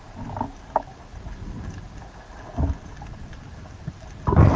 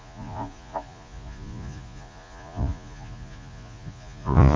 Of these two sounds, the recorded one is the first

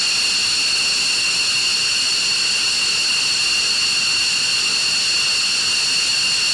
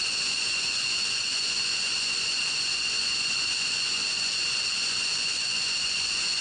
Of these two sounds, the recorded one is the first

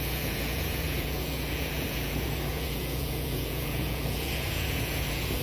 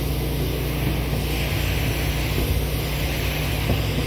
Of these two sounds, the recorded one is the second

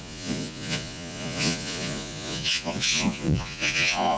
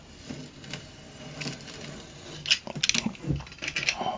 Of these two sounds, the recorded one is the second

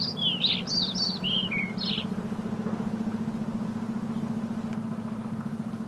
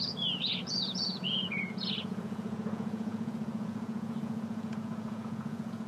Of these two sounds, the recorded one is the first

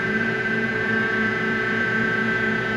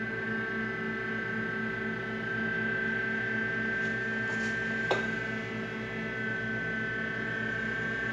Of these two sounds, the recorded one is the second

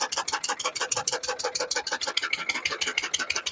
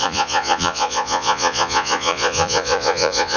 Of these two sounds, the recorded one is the first